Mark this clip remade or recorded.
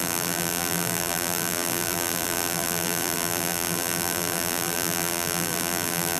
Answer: remade